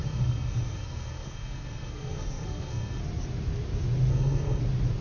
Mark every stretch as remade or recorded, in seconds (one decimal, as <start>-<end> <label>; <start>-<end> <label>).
0.0-3.0 remade; 3.0-4.1 recorded; 4.1-4.6 remade; 4.6-5.0 recorded